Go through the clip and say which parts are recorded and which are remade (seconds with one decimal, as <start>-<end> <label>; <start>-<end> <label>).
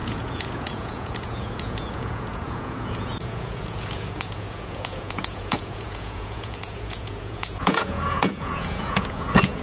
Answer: 0.0-9.6 remade